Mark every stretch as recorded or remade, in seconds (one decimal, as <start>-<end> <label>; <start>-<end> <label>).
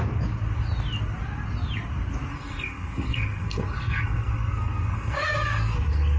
0.0-2.3 recorded; 2.3-6.2 remade